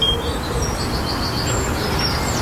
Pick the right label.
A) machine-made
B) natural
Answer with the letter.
B